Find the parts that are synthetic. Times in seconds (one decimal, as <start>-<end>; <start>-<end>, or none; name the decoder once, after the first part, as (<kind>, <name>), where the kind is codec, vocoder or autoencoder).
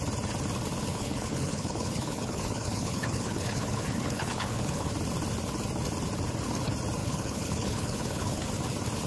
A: 0.9-4.9 (codec, HILCodec); 7.0-8.5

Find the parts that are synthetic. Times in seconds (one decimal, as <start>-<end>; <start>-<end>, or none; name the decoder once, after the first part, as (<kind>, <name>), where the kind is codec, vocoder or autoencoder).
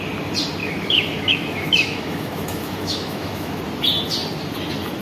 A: 0.6-3.6 (autoencoder, DAC-VAE)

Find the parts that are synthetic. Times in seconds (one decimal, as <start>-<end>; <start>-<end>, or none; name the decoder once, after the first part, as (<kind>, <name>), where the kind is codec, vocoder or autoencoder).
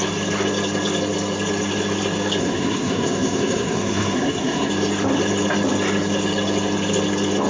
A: 2.4-4.7 (codec, SNAC)